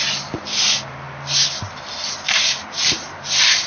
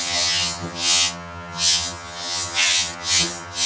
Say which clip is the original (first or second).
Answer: first